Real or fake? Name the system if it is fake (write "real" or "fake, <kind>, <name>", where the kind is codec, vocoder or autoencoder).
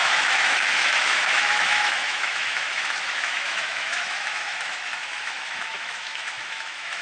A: fake, autoencoder, DAC-VAE